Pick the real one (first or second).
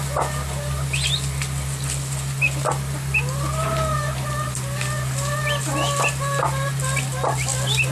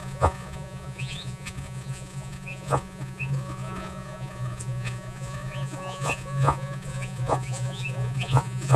first